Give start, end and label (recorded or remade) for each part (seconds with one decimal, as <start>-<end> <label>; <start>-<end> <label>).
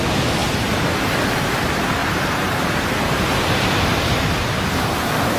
0.0-0.4 recorded; 0.4-0.9 remade; 0.9-2.0 recorded; 2.0-5.4 remade